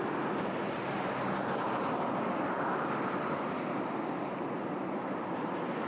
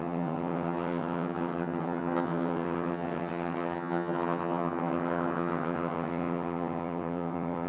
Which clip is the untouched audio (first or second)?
first